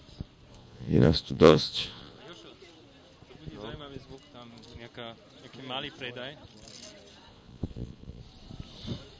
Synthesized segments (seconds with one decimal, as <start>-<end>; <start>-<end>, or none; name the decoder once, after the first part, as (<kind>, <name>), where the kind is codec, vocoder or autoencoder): 0.5-2.2 (vocoder, Vocos); 7.3-8.2